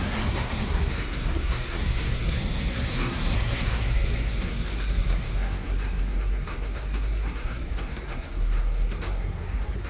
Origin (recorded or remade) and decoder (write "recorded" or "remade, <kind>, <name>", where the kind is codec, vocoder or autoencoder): remade, codec, SNAC